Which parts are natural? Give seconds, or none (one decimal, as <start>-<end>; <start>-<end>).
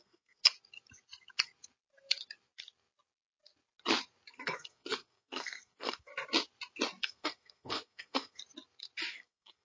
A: 0.4-4.3; 6.1-7.0; 8.4-9.1